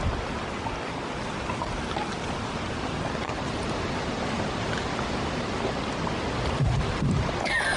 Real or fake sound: real